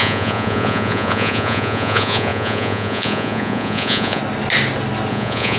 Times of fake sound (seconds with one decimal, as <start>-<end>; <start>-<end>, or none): 0.0-4.2; 5.1-5.6